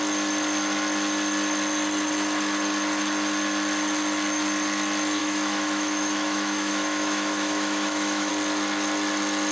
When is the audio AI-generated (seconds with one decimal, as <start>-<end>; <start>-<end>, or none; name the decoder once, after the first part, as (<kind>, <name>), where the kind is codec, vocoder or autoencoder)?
5.2-8.3 (autoencoder, DAC-VAE)